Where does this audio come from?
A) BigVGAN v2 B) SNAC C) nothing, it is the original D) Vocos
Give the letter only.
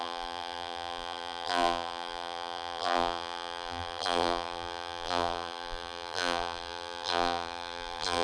A